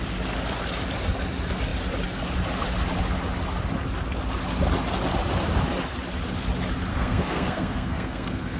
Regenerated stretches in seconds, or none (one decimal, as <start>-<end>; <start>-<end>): 6.9-8.6